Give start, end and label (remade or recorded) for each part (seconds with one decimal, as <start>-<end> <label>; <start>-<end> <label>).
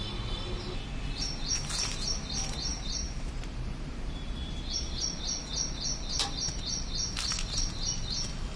0.0-2.7 recorded; 2.7-4.7 remade; 4.7-8.6 recorded